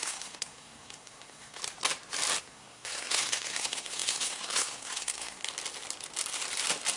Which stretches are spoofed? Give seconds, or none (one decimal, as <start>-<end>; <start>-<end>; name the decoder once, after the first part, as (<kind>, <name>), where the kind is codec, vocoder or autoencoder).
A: 0.0-1.6 (codec, SNAC); 2.4-5.4